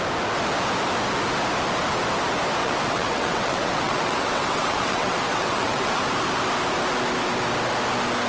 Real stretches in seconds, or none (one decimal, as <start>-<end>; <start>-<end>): 0.0-2.6; 6.0-8.3